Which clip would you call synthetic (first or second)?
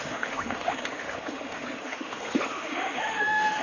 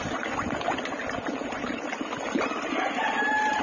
first